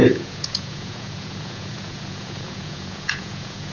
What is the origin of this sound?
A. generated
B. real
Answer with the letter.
A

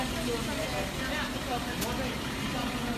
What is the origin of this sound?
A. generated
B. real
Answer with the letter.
B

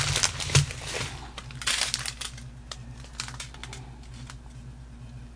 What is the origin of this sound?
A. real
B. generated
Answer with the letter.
A